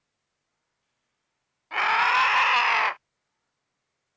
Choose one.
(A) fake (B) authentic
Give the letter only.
B